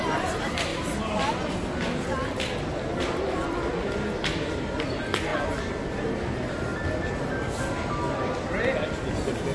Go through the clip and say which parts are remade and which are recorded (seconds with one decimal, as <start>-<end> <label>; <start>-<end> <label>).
0.0-9.5 recorded